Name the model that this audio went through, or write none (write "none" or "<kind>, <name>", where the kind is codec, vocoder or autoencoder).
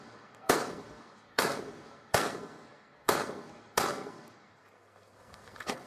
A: codec, SNAC